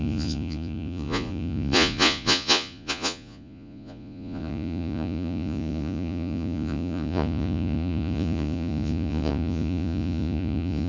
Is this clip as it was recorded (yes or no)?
no